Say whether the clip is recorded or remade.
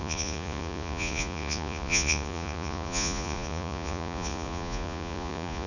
remade